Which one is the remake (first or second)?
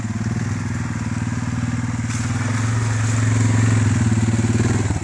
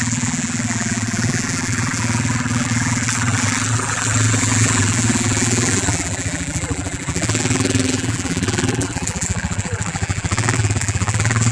second